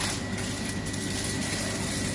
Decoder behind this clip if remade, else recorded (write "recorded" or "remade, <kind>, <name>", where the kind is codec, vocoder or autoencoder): recorded